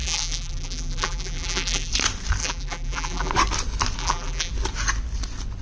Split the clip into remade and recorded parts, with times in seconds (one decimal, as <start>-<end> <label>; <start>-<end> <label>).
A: 0.0-1.9 remade; 1.9-2.4 recorded; 2.4-3.3 remade; 3.3-4.0 recorded; 4.0-4.5 remade; 4.5-5.6 recorded